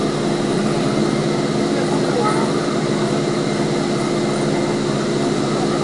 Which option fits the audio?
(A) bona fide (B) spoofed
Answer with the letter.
A